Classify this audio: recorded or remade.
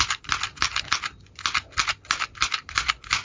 recorded